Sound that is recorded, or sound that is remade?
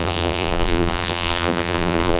remade